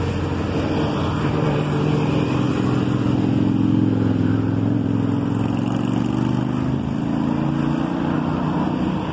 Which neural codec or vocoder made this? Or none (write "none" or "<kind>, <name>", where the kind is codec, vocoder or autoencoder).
none